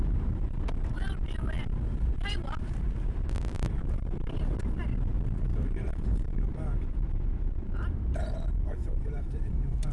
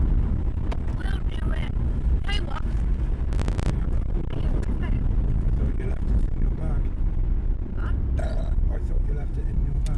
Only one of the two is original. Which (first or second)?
second